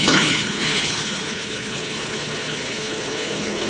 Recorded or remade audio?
remade